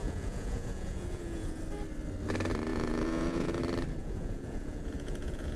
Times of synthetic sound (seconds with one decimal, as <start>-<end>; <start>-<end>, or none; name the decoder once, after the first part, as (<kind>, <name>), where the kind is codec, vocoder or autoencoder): 0.0-1.6 (vocoder, Vocos); 2.7-3.6; 4.0-5.6